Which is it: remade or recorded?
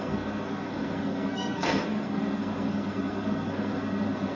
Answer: remade